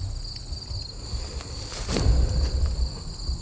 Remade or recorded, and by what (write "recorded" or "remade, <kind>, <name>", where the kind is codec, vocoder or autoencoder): recorded